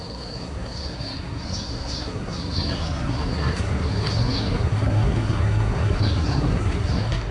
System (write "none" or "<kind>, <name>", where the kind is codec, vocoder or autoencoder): codec, SNAC